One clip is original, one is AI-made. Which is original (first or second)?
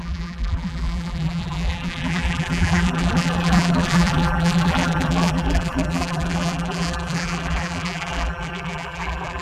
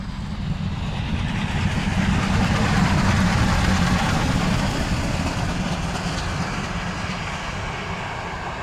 second